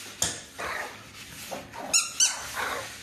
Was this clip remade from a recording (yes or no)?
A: no